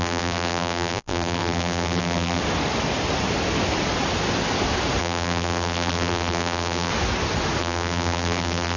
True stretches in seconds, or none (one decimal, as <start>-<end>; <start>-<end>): 2.4-5.0; 6.9-7.6